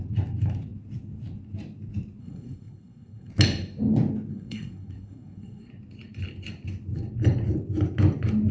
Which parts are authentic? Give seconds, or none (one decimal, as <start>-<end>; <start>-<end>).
0.0-2.2; 3.3-4.3; 5.7-8.5